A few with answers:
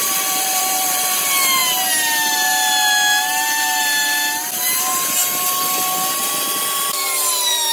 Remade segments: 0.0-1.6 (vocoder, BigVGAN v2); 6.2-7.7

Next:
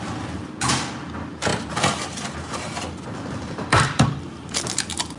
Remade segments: 1.5-4.6 (vocoder, BigVGAN v2)

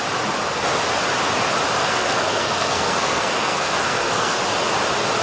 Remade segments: 1.8-4.4 (codec, SNAC)

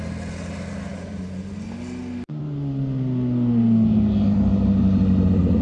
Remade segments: none